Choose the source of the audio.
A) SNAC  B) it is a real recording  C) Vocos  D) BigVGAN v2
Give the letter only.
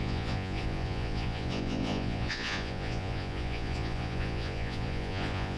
C